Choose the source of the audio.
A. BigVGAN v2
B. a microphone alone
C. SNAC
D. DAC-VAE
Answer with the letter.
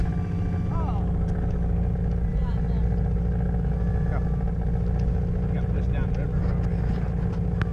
B